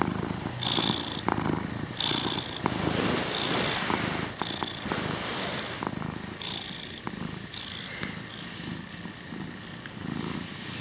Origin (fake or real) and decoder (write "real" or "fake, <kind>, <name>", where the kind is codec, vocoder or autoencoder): real